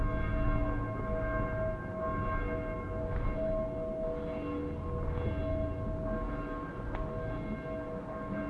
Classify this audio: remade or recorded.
recorded